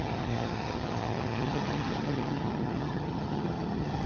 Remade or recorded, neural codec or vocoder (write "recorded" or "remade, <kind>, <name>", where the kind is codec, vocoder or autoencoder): remade, vocoder, HiFi-GAN